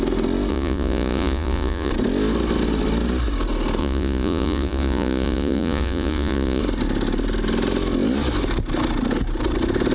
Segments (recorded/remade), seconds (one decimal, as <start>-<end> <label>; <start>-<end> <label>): 0.0-0.5 recorded; 0.5-1.9 remade; 1.9-3.8 recorded; 3.8-6.6 remade; 6.6-9.9 recorded